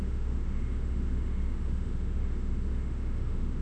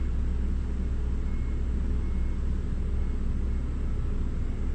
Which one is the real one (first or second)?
second